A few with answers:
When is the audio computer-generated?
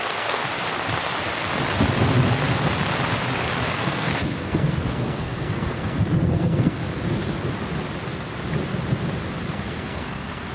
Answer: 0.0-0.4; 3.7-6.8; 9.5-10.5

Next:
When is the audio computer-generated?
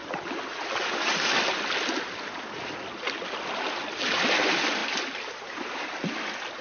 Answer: none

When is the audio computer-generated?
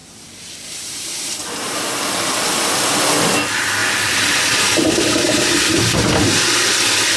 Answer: 0.0-1.8; 3.8-6.0